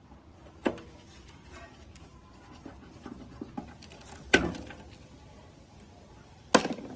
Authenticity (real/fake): real